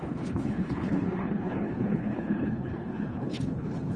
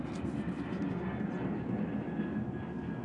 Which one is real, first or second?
second